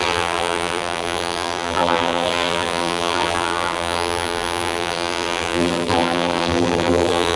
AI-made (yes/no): yes